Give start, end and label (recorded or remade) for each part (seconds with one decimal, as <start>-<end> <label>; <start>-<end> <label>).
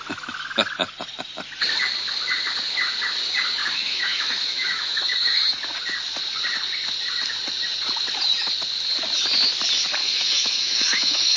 0.0-3.6 recorded; 3.6-5.6 remade; 5.6-10.0 recorded; 10.0-11.4 remade